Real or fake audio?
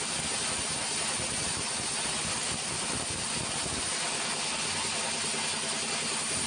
real